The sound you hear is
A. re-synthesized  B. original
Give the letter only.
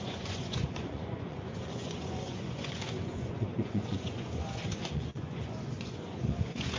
A